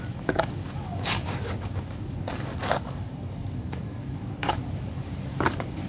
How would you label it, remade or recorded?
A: remade